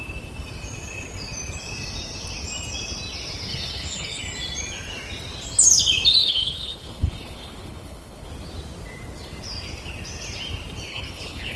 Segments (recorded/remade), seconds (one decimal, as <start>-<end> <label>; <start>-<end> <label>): 0.0-3.5 recorded; 3.5-4.2 remade; 4.2-6.2 recorded; 6.2-8.3 remade; 8.3-10.9 recorded; 10.9-11.6 remade